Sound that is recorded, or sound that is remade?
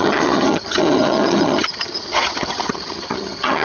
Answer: remade